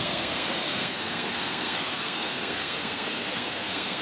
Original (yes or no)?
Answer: no